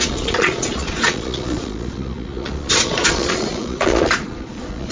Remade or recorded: remade